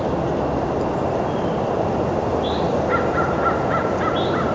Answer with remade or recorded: recorded